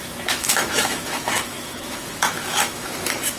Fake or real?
fake